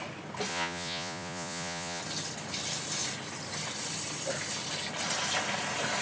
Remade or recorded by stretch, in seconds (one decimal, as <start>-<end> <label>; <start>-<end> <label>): 0.0-0.5 recorded; 0.5-2.0 remade; 2.0-6.0 recorded